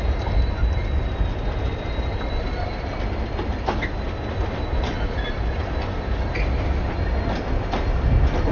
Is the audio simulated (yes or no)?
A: no